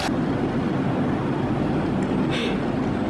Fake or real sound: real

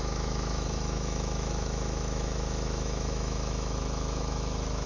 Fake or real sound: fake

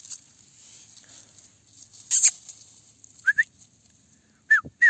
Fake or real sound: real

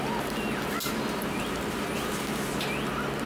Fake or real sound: real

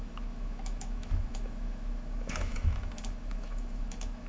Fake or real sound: fake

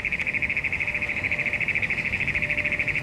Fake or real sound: fake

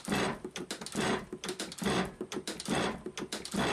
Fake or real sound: real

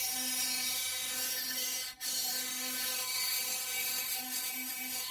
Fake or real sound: fake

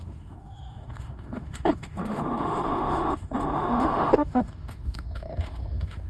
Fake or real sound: fake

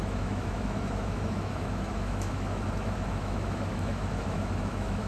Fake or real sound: fake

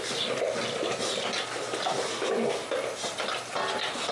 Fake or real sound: real